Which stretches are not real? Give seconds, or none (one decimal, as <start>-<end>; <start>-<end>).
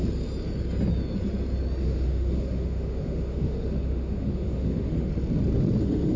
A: 1.8-5.1; 5.8-6.2